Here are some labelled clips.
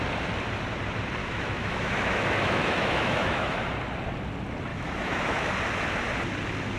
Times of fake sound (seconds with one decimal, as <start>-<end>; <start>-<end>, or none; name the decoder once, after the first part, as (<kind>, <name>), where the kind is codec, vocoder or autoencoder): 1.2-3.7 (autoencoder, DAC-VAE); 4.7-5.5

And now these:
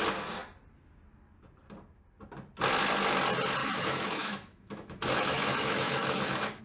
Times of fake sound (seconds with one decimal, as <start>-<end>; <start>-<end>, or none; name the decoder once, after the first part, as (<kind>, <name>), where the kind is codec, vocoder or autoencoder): 3.6-6.6 (autoencoder, DAC-VAE)

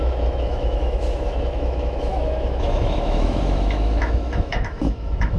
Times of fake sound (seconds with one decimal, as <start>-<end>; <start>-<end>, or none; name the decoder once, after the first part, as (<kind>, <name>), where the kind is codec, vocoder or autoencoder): 0.0-5.4 (autoencoder, DAC-VAE)

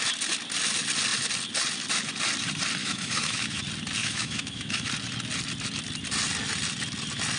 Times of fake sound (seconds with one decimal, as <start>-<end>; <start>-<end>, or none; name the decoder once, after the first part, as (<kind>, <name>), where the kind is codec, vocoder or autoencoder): 2.8-3.6 (autoencoder, DAC-VAE); 4.0-4.9

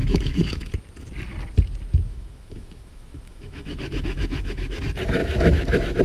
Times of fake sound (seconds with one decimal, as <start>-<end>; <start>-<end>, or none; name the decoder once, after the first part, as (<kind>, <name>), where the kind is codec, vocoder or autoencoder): 0.0-0.7 (autoencoder, DAC-VAE); 2.1-4.8; 5.2-6.0

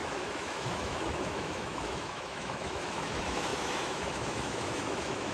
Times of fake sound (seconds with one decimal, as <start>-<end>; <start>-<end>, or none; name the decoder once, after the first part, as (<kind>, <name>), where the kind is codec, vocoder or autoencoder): 0.0-5.3 (autoencoder, DAC-VAE)

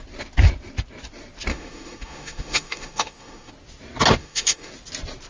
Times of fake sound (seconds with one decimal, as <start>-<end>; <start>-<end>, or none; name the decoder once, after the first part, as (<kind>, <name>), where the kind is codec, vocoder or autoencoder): 1.5-3.5 (autoencoder, DAC-VAE); 4.2-4.7